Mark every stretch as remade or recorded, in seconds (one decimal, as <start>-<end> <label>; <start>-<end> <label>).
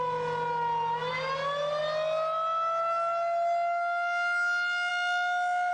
0.0-5.7 recorded